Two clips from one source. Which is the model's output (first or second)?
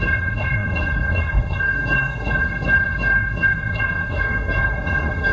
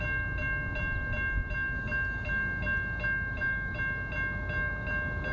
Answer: first